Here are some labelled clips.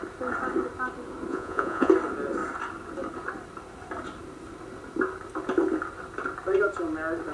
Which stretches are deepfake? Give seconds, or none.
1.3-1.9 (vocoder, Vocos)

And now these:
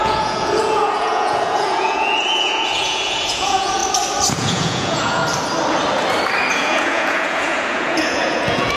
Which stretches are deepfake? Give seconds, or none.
0.0-3.8 (vocoder, Vocos); 4.3-5.2; 6.5-8.8

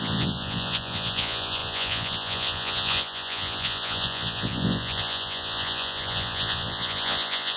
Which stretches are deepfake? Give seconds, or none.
0.0-7.6 (vocoder, Vocos)

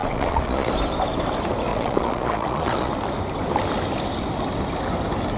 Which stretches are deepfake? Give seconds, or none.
0.0-0.7 (vocoder, Vocos); 1.7-2.9

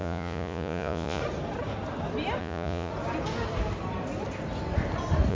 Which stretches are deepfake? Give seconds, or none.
0.0-1.2 (vocoder, Vocos); 2.4-2.9

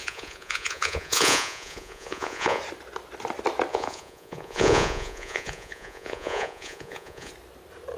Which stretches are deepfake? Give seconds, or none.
0.0-2.6 (vocoder, Vocos); 3.7-7.3